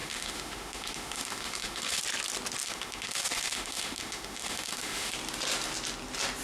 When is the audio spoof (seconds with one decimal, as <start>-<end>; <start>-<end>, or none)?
0.0-2.0; 2.6-5.1